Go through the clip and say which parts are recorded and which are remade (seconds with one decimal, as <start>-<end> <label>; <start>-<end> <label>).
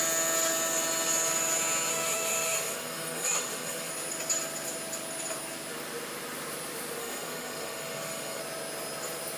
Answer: 0.0-1.9 recorded; 1.9-3.9 remade; 3.9-7.0 recorded; 7.0-8.4 remade; 8.4-9.4 recorded